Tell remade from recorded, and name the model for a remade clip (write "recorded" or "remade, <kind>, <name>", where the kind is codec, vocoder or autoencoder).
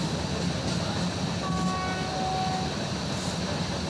recorded